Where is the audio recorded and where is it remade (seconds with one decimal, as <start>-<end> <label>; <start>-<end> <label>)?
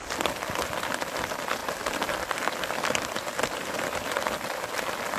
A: 0.0-1.6 recorded; 1.6-4.7 remade; 4.7-5.2 recorded